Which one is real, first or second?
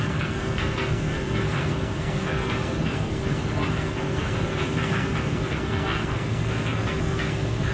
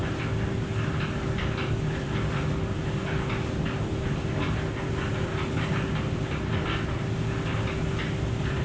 second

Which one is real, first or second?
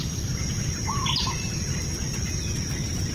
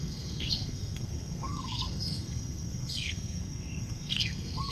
first